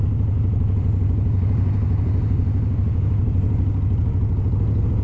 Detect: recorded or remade remade